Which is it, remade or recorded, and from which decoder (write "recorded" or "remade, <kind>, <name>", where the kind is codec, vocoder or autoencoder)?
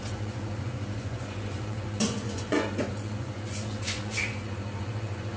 remade, vocoder, Vocos